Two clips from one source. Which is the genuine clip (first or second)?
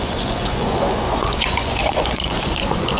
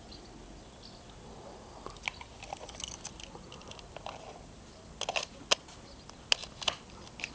second